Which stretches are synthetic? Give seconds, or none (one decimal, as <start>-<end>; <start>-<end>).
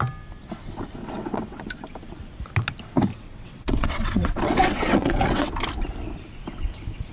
1.0-1.6; 3.1-5.5